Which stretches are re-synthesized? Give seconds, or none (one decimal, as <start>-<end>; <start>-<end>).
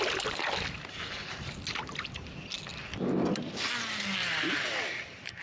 2.7-3.3; 4.2-5.4